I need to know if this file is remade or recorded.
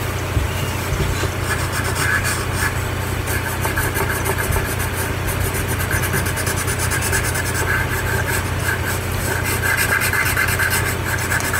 recorded